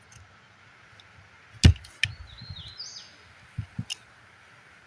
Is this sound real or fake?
real